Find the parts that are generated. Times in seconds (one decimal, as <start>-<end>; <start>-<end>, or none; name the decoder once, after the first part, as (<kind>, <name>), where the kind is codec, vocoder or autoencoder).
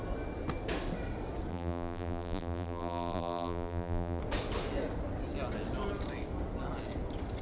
1.5-4.2 (vocoder, BigVGAN v2)